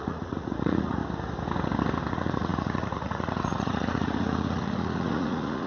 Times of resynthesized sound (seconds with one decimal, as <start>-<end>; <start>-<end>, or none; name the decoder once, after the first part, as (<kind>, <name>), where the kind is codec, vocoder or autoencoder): 0.0-1.0 (vocoder, Vocos); 2.1-5.7